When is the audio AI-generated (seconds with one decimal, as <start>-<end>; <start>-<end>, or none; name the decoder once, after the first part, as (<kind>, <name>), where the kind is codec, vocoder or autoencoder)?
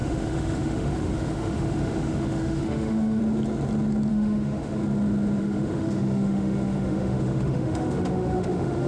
0.0-3.2 (autoencoder, DAC-VAE); 4.1-4.8; 5.4-8.9